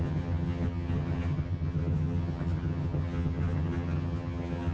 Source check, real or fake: fake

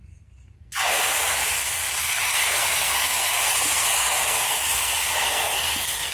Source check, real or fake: fake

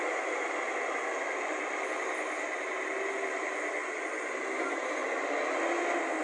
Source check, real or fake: real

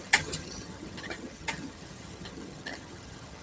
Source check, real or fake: fake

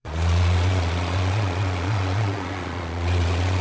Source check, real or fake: fake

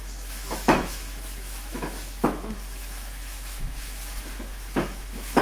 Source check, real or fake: fake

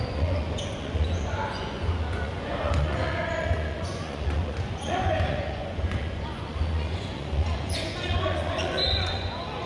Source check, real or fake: fake